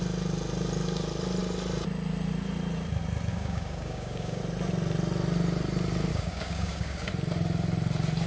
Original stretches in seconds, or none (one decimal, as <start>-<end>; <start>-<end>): 0.0-3.3; 4.4-6.1; 7.1-8.3